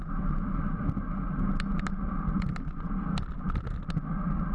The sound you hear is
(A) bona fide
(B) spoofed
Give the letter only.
A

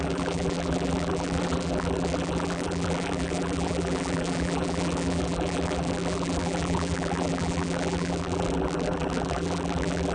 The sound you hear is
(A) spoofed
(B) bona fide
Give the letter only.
A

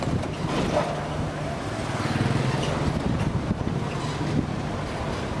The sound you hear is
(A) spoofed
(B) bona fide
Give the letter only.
B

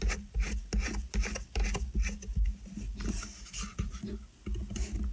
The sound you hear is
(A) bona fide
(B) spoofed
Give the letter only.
A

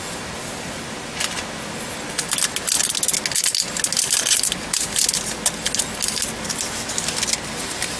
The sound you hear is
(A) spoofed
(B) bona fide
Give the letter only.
B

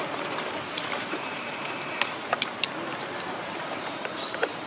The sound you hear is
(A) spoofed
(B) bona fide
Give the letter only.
A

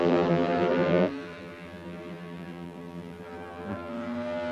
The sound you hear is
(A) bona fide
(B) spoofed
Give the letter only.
B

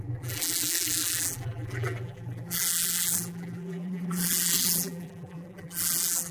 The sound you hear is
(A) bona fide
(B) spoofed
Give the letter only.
B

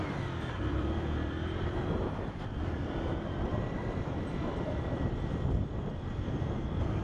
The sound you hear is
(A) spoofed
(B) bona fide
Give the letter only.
A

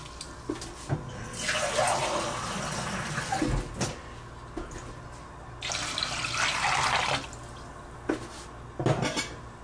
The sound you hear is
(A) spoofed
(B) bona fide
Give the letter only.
B